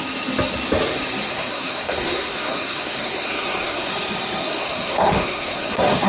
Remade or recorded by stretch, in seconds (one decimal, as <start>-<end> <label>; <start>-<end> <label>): 0.0-1.3 recorded; 1.3-3.9 remade; 3.9-4.4 recorded; 4.4-6.1 remade